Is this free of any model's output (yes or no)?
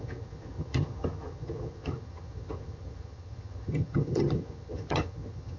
no